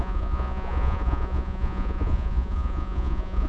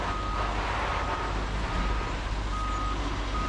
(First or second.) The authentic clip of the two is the second